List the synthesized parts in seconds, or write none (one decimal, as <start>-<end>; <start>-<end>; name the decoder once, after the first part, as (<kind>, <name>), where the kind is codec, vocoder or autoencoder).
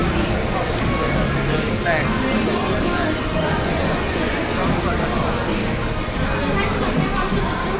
3.4-4.4 (vocoder, Vocos)